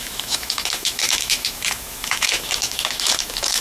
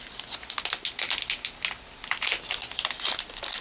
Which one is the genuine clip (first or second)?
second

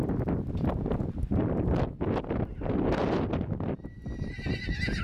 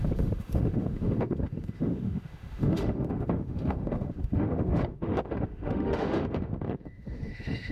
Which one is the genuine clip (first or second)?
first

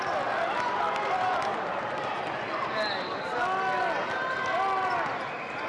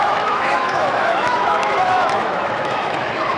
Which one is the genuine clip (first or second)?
first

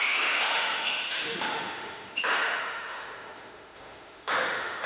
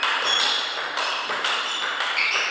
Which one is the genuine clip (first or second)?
second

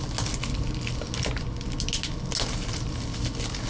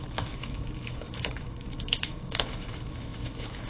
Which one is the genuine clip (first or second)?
first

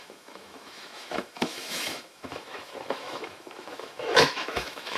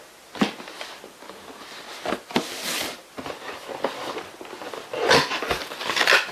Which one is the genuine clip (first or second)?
second